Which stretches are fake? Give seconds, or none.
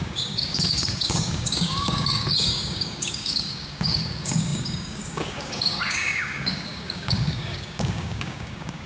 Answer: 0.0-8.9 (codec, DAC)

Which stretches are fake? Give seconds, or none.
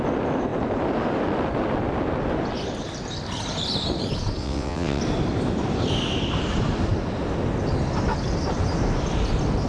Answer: 4.4-5.0 (vocoder, WaveNeXt)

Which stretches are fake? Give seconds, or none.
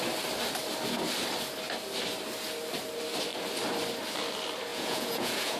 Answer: 4.7-5.6 (vocoder, Vocos)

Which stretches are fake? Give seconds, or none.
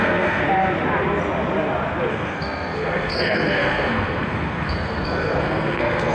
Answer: 0.0-0.4 (codec, SNAC); 2.1-6.1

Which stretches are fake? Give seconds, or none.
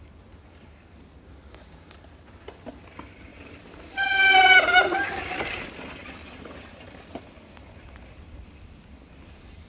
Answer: none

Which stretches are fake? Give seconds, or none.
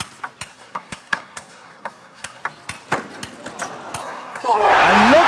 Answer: 0.5-2.4 (codec, SNAC); 4.0-4.7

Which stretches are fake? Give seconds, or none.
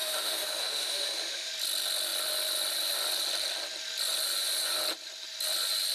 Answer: 0.0-1.5 (autoencoder, DAC-VAE)